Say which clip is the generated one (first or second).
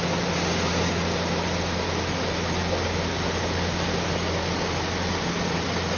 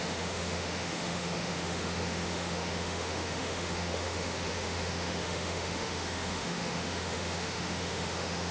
second